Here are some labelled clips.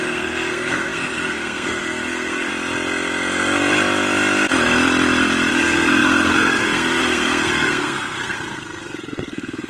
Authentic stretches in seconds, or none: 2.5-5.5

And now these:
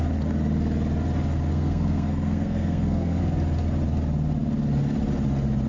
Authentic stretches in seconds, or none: 0.0-1.5; 3.2-5.7